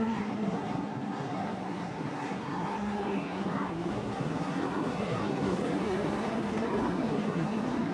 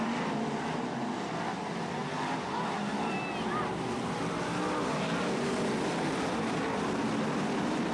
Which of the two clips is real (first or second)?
second